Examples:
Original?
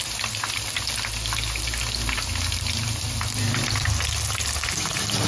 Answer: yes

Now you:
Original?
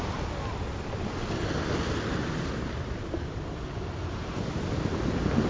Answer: yes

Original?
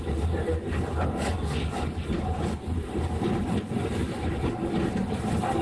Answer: yes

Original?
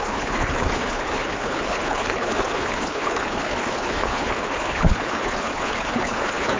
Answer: no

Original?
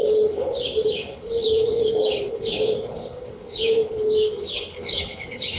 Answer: no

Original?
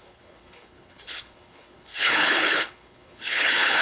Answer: no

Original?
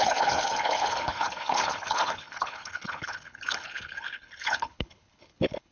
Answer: no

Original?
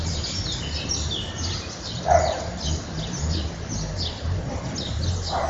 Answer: yes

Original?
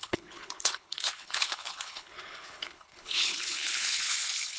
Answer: no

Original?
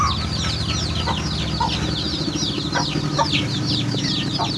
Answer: yes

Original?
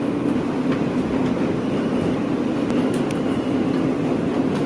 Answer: yes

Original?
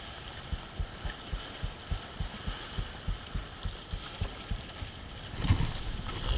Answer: yes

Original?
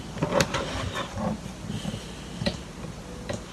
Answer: yes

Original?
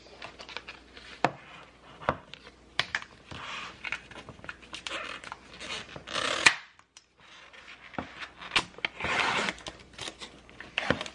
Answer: yes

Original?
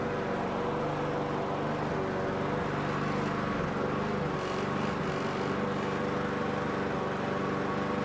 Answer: yes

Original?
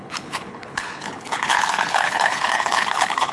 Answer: no